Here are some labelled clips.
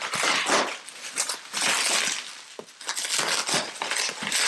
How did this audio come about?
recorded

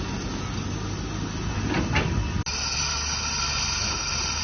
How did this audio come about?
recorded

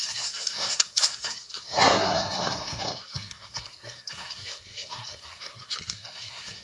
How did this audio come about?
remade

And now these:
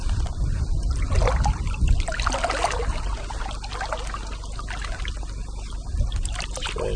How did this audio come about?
recorded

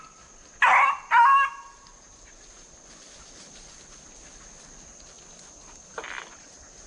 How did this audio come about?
recorded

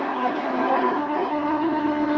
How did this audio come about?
remade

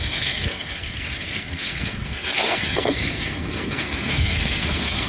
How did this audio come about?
remade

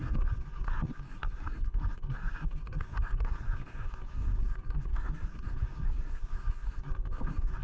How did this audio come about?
remade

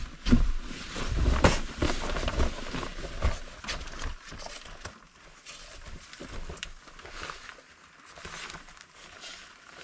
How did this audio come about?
recorded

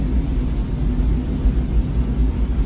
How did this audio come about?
recorded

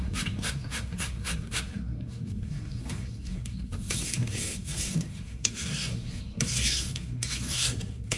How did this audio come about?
remade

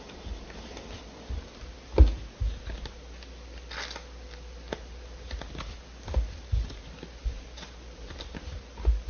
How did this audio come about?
recorded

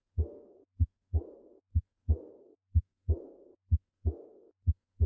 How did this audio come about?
remade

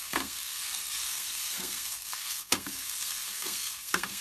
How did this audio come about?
remade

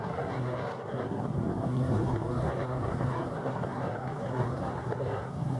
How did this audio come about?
remade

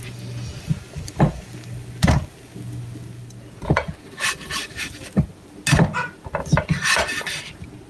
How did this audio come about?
recorded